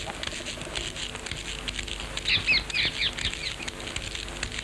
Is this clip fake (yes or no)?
no